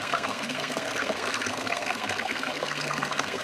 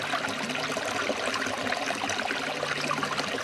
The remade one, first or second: first